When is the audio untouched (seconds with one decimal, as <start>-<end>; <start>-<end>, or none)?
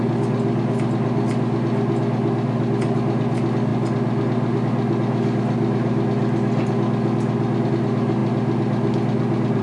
0.0-9.6